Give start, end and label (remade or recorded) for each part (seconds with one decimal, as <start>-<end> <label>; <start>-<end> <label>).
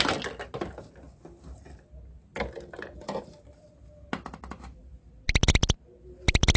0.0-6.6 recorded